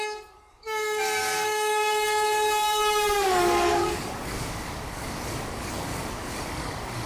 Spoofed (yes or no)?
yes